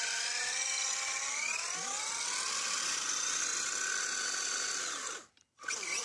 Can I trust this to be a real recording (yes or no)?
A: yes